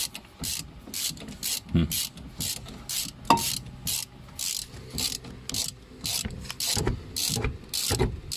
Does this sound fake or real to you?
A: real